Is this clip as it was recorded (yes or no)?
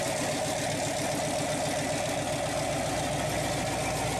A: yes